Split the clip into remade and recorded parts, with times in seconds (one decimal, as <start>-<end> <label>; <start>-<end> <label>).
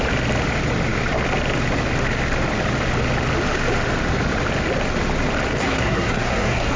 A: 0.0-5.6 recorded; 5.6-6.8 remade